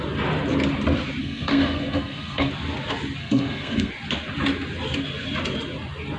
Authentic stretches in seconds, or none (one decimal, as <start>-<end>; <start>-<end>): 0.0-1.2; 2.5-3.2; 3.9-6.2